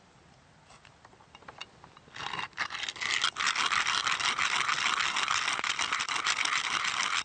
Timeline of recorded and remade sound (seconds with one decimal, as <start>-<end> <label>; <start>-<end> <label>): 0.0-7.2 recorded